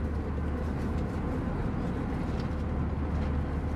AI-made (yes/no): no